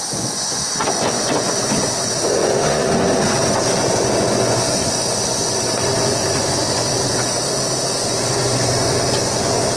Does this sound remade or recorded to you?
remade